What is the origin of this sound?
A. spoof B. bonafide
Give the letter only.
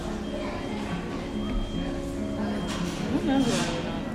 B